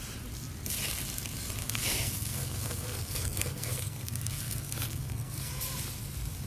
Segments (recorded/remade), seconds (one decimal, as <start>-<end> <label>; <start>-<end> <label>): 0.0-1.6 recorded; 1.6-5.5 remade; 5.5-6.5 recorded